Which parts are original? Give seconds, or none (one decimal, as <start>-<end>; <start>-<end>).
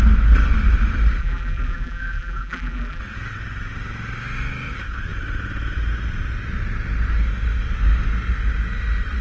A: 0.0-1.2; 3.0-9.2